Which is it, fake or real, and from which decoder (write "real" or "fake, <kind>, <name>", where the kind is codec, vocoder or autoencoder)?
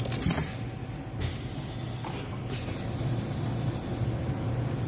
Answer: real